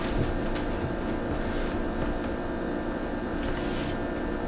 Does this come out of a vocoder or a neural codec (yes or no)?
no